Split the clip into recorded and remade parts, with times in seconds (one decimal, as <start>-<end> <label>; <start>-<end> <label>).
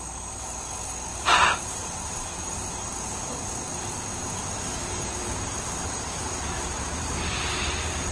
0.0-1.1 recorded; 1.1-3.3 remade; 3.3-3.7 recorded; 3.7-8.1 remade